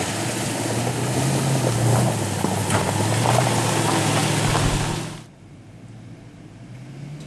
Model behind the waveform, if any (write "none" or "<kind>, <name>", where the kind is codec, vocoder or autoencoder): none